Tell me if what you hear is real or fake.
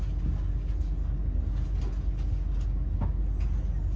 real